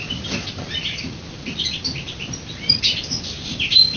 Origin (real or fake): fake